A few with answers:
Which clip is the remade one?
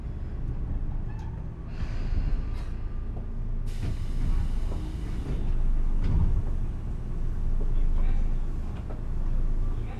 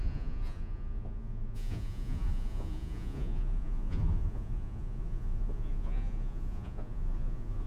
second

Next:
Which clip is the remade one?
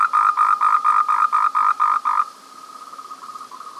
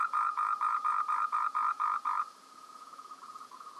second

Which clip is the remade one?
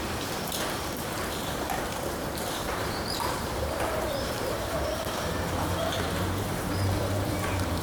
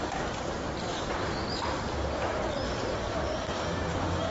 first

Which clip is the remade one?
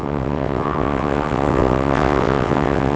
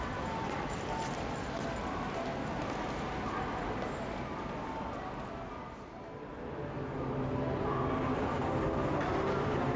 first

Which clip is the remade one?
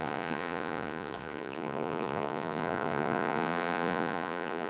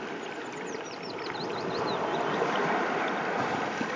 first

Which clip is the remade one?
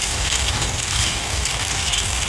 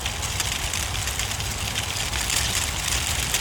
first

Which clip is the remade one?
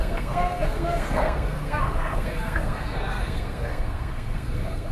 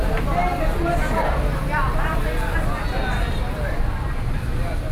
first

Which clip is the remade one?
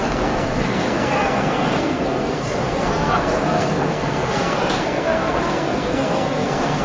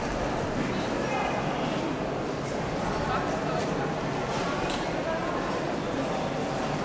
first